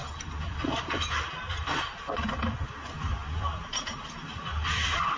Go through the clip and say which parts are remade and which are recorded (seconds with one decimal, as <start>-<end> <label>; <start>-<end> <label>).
0.0-5.2 remade